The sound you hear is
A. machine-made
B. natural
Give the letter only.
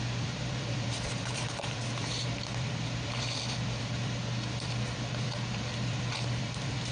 A